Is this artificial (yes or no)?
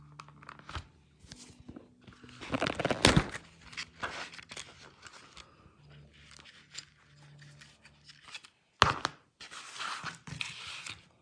no